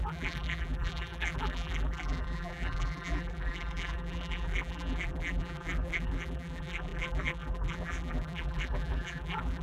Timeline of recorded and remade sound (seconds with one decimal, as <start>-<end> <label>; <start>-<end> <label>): 0.0-9.6 remade